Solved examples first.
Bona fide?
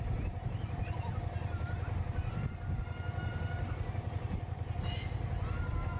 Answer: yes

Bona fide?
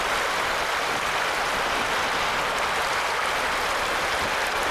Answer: yes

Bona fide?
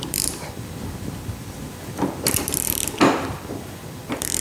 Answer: no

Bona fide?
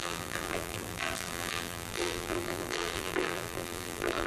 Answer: no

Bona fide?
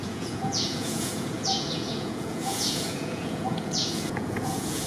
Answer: no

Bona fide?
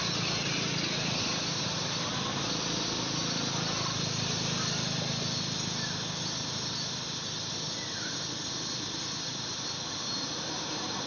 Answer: yes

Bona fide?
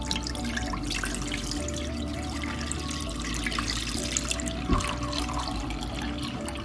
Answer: yes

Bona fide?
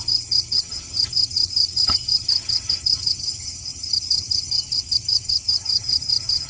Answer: no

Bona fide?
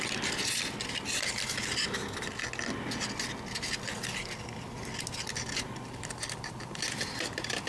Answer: yes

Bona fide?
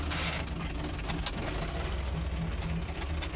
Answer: yes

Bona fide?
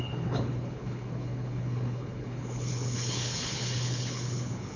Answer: no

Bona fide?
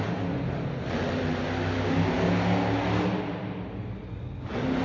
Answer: yes